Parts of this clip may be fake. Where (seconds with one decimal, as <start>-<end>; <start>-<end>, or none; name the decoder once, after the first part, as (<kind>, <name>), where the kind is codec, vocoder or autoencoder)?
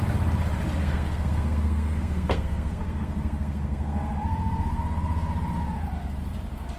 0.8-4.8 (codec, SNAC)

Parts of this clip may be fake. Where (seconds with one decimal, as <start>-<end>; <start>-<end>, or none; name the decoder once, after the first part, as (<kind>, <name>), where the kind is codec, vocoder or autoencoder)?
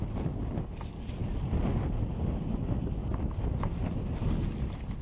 none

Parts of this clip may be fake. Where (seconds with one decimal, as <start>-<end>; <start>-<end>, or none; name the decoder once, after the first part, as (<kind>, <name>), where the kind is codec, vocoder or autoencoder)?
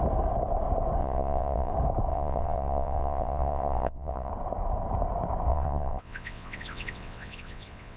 1.0-1.7 (vocoder, WaveNeXt); 2.1-4.3; 5.5-8.0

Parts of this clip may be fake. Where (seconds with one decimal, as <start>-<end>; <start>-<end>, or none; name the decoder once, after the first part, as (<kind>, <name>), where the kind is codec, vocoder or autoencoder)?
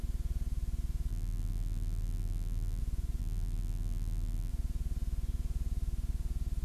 1.1-2.8 (vocoder, BigVGAN v2); 3.2-4.5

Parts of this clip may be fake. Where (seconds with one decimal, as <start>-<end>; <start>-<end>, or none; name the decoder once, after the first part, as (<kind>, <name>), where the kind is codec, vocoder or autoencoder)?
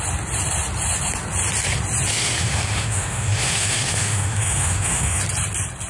2.1-5.2 (autoencoder, DAC-VAE)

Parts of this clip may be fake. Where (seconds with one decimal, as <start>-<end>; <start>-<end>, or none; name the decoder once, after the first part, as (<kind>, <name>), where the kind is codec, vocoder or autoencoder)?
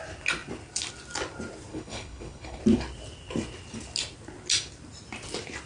1.7-2.6 (codec, HILCodec)